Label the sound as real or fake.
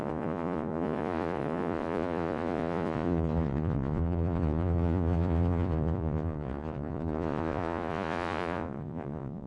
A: fake